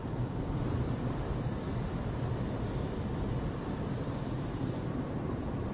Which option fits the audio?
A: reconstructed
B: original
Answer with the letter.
A